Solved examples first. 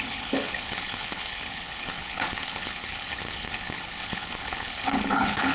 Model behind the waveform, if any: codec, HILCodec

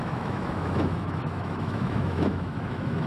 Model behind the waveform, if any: autoencoder, DAC-VAE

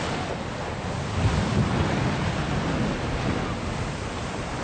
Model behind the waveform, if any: none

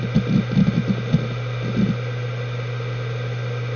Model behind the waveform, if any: none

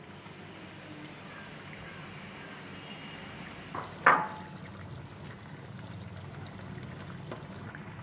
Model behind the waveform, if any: none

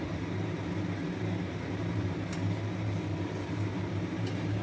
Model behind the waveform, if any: vocoder, BigVGAN v2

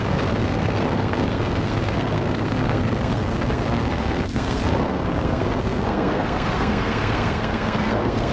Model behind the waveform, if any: codec, SNAC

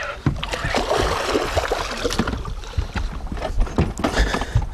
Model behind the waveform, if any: none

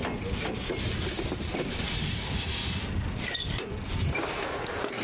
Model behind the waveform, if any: none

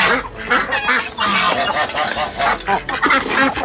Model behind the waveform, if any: none